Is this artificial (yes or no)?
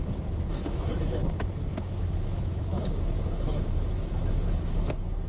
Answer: yes